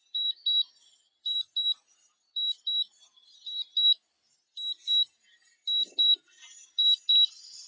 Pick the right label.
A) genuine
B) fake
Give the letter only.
A